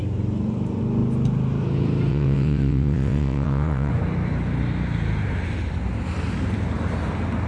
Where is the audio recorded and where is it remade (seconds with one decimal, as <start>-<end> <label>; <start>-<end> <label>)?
0.0-2.1 recorded; 2.1-3.9 remade; 3.9-7.5 recorded